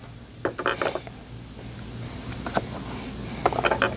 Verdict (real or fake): real